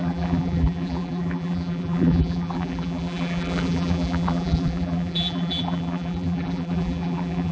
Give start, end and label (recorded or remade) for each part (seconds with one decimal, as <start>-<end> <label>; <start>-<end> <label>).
0.0-7.5 remade